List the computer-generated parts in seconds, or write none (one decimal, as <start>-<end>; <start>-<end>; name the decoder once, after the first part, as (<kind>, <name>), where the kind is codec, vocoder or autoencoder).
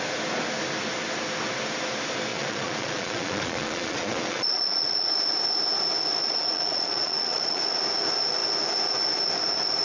2.3-5.1 (vocoder, Vocos); 6.2-7.6